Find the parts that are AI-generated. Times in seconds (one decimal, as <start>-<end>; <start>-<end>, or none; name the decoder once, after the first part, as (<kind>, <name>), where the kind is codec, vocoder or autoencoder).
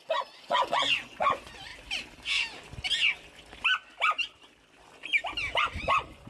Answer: 0.0-1.7 (vocoder, Vocos); 5.5-6.3